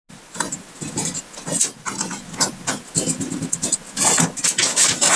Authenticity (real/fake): real